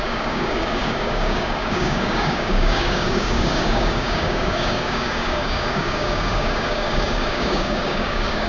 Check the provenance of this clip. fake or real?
fake